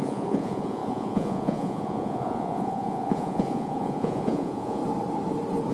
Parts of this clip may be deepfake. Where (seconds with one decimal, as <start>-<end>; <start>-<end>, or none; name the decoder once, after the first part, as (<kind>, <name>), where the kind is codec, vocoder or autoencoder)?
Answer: 0.0-4.8 (vocoder, Vocos)

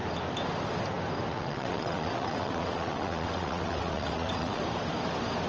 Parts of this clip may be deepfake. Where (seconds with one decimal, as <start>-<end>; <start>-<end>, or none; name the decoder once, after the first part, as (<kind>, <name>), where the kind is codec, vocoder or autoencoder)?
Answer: 1.3-4.6 (vocoder, WaveNeXt)